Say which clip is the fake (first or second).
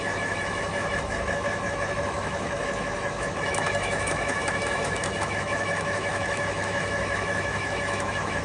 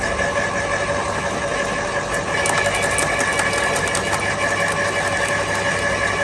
first